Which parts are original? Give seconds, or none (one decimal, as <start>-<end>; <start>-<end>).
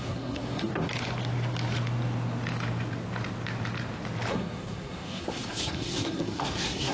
0.7-4.3